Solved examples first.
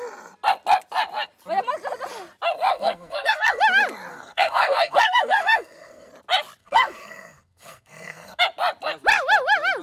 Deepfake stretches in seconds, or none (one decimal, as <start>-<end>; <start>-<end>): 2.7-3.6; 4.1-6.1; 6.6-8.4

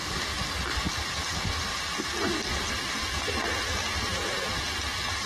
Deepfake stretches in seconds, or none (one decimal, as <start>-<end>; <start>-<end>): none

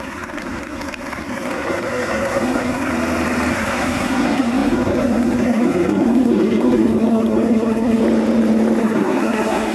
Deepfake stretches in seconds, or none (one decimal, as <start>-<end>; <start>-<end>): 0.0-2.9; 3.5-8.0; 8.8-9.7

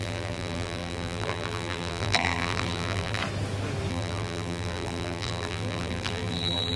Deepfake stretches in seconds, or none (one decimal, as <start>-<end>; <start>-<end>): 0.0-3.2; 3.9-6.8